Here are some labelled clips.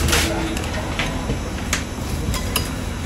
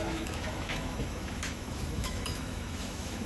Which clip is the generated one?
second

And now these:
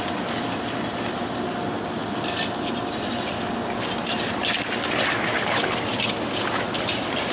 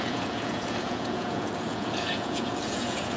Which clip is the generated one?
second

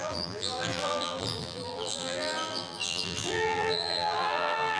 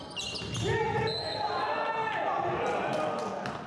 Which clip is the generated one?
first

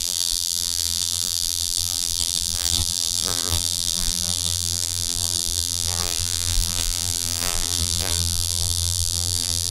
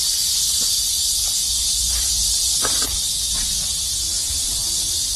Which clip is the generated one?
first